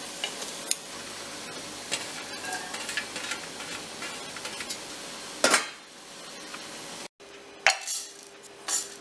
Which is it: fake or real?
real